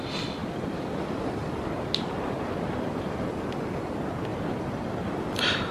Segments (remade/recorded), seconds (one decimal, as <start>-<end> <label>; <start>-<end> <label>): 0.0-5.7 recorded